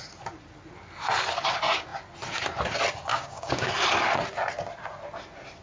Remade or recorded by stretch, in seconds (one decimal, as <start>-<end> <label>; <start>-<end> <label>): 0.0-3.1 recorded; 3.1-3.7 remade; 3.7-5.6 recorded

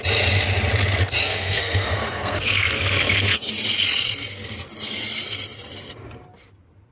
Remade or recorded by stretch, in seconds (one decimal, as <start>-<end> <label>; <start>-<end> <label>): 0.0-1.2 recorded; 1.2-3.5 remade; 3.5-6.9 recorded

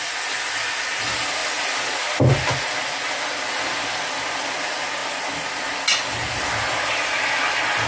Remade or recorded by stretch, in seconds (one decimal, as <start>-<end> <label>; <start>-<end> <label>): 0.0-7.9 recorded

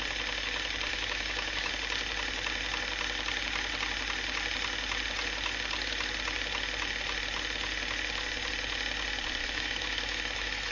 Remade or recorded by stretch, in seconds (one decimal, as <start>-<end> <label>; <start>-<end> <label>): 0.0-0.9 recorded; 0.9-1.7 remade; 1.7-9.4 recorded; 9.4-10.7 remade

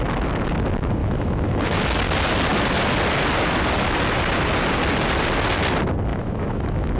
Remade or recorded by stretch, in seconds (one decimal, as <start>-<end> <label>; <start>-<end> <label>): 0.0-1.0 recorded; 1.0-1.8 remade; 1.8-6.1 recorded; 6.1-7.0 remade